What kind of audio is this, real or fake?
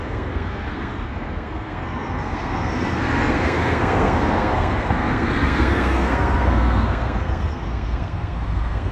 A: fake